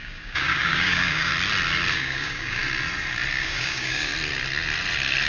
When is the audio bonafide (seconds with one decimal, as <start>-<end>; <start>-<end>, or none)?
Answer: 1.3-1.9; 2.6-3.3; 4.1-5.3